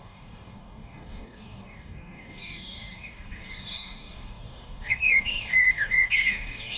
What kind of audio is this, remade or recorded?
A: remade